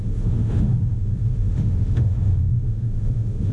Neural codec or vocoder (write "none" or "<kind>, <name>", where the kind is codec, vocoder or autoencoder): autoencoder, DAC-VAE